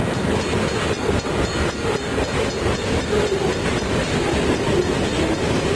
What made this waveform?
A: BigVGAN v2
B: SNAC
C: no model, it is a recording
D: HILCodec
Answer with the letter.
C